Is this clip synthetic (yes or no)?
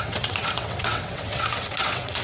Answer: yes